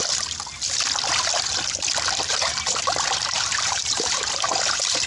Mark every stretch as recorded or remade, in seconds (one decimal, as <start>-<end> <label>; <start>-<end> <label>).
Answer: 0.0-2.3 recorded; 2.3-5.1 remade

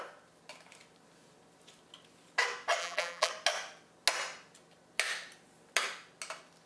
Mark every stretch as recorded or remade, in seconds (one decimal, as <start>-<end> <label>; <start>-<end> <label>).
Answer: 0.0-2.8 recorded; 2.8-3.3 remade; 3.3-6.7 recorded

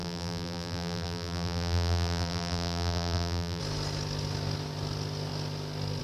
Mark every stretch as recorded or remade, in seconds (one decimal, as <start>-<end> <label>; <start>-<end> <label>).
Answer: 0.0-3.6 remade; 3.6-6.0 recorded

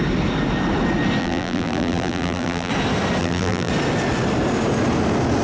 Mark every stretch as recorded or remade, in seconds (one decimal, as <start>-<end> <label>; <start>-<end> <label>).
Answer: 0.0-1.2 recorded; 1.2-2.7 remade; 2.7-3.2 recorded; 3.2-3.7 remade; 3.7-5.4 recorded